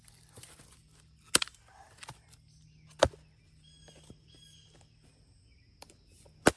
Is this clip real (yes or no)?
yes